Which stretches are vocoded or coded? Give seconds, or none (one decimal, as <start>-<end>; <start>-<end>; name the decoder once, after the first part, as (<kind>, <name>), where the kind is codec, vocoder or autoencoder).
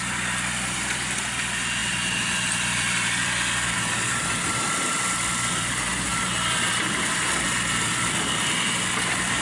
0.0-9.4 (vocoder, BigVGAN v2)